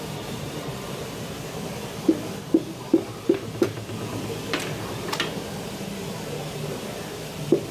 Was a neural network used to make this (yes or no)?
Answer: yes